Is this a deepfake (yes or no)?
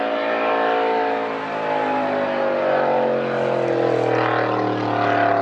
no